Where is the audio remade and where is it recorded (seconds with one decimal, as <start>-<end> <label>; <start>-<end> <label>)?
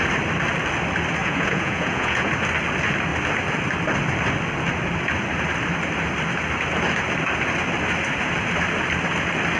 0.0-1.2 recorded; 1.2-2.3 remade; 2.3-9.6 recorded